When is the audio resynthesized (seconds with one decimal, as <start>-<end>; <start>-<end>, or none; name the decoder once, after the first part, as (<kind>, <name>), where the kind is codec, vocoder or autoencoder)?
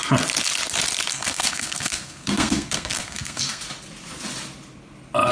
1.1-3.6 (codec, SNAC)